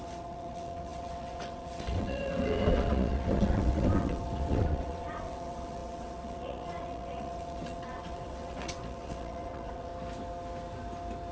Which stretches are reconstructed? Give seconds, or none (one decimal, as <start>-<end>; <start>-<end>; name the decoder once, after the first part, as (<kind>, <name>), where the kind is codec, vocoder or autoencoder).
0.0-9.9 (vocoder, WaveNeXt)

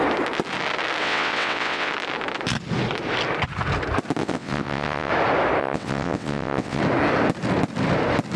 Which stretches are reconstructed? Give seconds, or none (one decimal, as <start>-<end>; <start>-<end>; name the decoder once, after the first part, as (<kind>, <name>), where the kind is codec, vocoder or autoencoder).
1.0-1.9 (vocoder, WaveNeXt); 4.2-5.1; 5.6-6.8

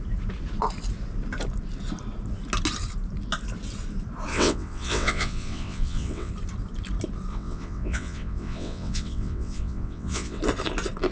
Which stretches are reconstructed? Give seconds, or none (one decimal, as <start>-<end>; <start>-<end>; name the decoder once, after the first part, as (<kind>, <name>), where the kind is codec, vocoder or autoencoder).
4.3-6.3 (vocoder, WaveNeXt); 7.3-10.4

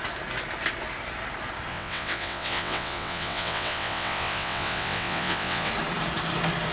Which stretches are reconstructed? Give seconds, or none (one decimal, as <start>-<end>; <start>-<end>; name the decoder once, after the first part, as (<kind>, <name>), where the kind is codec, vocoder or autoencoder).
1.7-5.7 (vocoder, WaveNeXt)